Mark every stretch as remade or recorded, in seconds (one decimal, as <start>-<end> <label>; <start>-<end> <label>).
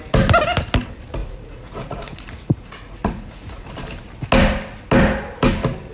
0.0-1.2 recorded; 1.2-3.7 remade; 3.7-5.9 recorded